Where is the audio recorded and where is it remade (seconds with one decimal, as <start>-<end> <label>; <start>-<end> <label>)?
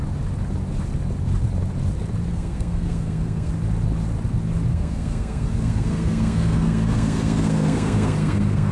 0.0-2.3 recorded; 2.3-3.5 remade; 3.5-4.7 recorded; 4.7-8.7 remade